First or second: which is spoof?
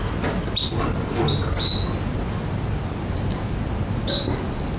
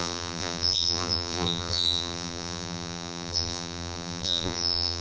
second